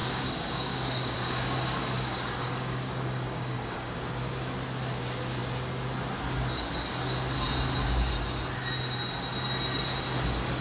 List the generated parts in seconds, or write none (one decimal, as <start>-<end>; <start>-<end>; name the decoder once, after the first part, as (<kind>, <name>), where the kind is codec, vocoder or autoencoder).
0.0-4.0 (codec, DAC)